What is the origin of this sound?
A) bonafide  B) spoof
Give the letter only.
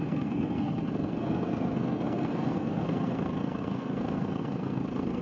B